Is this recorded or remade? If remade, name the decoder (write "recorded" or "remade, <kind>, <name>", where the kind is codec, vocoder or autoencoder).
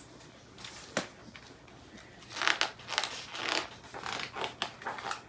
recorded